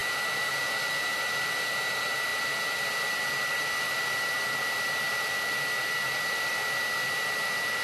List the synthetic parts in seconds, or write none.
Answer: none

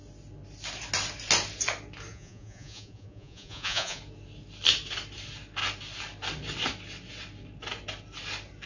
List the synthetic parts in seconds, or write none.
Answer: 2.1-4.0 (vocoder, Vocos)